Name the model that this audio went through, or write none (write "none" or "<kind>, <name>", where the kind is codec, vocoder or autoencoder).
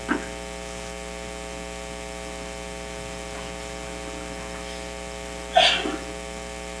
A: none